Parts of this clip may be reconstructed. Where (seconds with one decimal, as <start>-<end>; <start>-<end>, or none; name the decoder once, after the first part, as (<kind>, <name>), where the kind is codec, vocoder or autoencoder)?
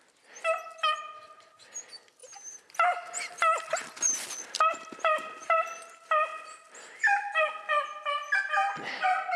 none